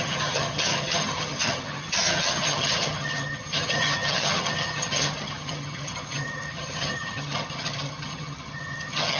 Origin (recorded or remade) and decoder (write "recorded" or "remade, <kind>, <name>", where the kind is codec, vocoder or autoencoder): remade, vocoder, HiFi-GAN